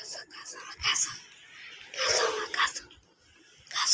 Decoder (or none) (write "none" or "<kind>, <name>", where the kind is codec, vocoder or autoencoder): none